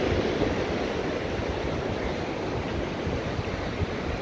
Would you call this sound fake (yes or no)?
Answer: no